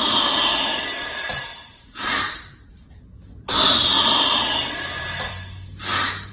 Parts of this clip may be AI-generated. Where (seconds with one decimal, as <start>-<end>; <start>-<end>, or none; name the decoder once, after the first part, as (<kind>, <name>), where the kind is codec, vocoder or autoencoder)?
1.5-5.3 (vocoder, BigVGAN v2)